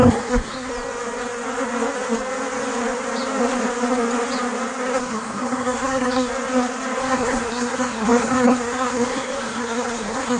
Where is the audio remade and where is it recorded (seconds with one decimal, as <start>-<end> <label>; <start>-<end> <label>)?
0.0-0.7 remade; 0.7-5.0 recorded; 5.0-6.3 remade; 6.3-7.0 recorded; 7.0-10.4 remade